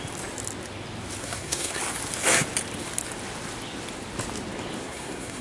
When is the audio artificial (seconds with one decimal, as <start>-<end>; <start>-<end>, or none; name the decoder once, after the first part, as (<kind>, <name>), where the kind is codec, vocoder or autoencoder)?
1.2-1.8 (codec, SNAC); 4.8-5.4